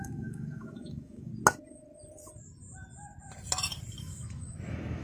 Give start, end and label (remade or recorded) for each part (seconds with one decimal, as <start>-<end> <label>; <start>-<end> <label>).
0.0-1.3 remade; 1.3-4.0 recorded; 4.0-5.0 remade